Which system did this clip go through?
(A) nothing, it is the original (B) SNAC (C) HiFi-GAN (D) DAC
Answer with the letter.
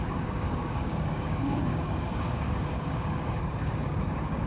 D